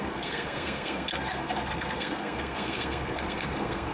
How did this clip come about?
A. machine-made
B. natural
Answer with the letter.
A